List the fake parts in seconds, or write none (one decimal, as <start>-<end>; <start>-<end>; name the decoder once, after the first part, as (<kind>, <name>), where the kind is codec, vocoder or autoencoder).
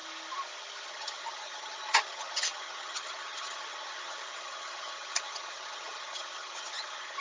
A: 0.9-7.2 (vocoder, HiFi-GAN)